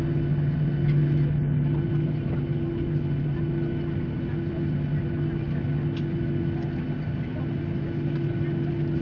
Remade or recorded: recorded